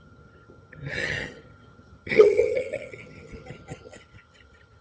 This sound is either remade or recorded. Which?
remade